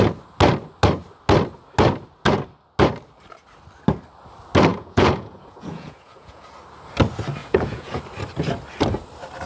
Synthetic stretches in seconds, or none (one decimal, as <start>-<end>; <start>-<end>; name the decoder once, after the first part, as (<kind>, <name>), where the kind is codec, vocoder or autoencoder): 4.7-6.4 (vocoder, Vocos); 7.4-8.0

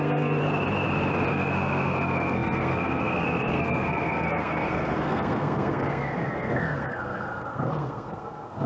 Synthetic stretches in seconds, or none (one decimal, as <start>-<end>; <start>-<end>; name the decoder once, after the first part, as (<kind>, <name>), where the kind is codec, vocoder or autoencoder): 0.0-0.4 (codec, SNAC); 1.3-8.7

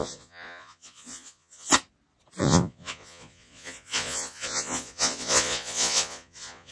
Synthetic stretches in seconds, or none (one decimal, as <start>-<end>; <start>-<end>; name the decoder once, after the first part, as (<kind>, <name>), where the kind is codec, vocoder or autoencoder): 0.0-1.7 (vocoder, Vocos); 2.4-6.7

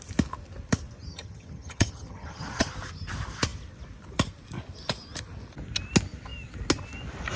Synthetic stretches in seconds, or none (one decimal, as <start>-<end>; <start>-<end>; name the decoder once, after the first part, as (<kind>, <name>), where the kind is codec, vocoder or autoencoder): 1.1-2.7 (vocoder, HiFi-GAN)

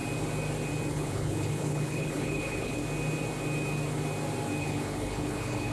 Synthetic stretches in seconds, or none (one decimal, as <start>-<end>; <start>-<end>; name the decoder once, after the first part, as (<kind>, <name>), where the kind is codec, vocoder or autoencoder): 0.9-2.8 (codec, HILCodec); 4.6-5.7

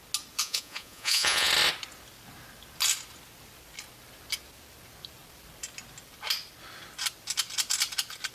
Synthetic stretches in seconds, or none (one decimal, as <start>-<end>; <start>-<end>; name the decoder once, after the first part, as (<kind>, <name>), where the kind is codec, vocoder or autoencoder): 0.4-1.5 (vocoder, Vocos)

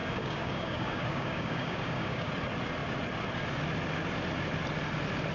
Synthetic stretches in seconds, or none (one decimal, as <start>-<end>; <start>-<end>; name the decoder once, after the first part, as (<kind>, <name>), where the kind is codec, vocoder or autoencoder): 0.0-2.3 (codec, DAC)